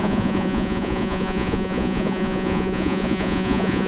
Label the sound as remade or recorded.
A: remade